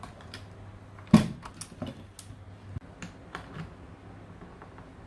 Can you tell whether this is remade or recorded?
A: recorded